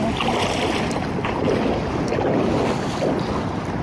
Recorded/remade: recorded